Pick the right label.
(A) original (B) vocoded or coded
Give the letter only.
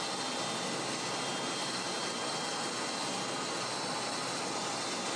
A